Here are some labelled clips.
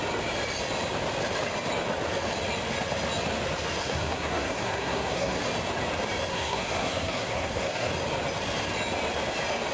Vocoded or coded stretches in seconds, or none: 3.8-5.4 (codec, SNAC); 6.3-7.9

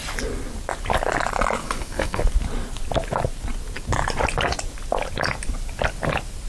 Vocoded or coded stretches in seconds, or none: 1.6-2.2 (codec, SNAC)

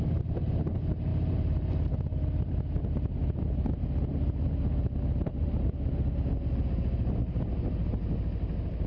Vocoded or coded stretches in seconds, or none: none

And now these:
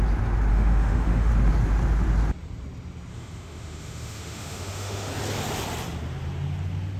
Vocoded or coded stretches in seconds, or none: 0.5-1.3 (autoencoder, DAC-VAE); 3.1-5.1